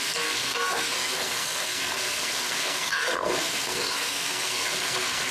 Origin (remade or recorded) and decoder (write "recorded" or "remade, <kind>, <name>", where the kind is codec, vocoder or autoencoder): remade, codec, SNAC